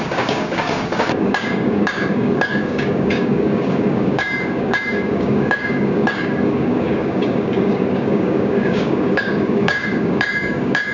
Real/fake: fake